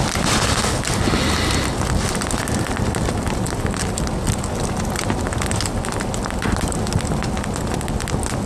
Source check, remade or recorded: recorded